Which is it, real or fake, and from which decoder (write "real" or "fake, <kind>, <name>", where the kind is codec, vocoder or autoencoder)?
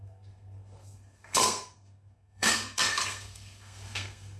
fake, codec, SNAC